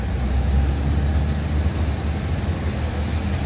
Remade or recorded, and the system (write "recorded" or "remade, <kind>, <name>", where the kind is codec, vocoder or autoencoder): recorded